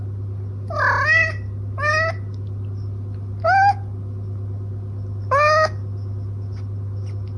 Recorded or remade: recorded